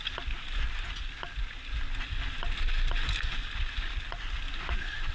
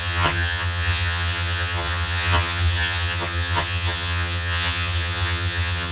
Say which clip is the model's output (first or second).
second